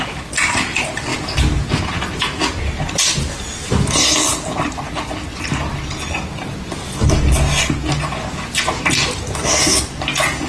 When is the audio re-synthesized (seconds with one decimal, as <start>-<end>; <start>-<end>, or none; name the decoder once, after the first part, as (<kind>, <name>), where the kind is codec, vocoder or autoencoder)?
none